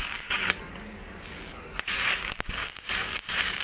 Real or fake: fake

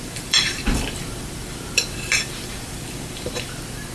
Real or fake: fake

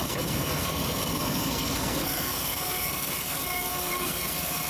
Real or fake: fake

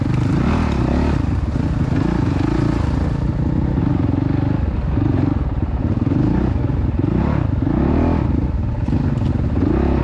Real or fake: real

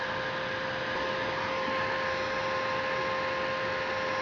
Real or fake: real